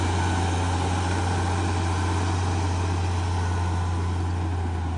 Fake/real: real